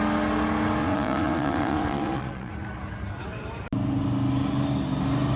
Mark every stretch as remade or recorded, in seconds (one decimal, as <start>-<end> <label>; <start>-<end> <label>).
0.0-0.8 recorded; 0.8-2.5 remade; 2.5-5.4 recorded